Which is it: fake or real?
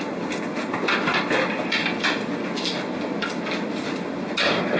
real